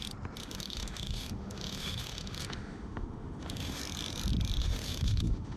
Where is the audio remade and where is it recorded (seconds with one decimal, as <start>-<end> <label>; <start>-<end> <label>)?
0.0-0.4 recorded; 0.4-3.8 remade; 3.8-4.6 recorded; 4.6-5.6 remade